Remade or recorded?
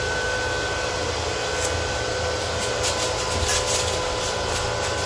recorded